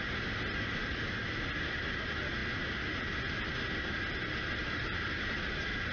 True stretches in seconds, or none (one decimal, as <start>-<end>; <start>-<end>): 0.0-5.9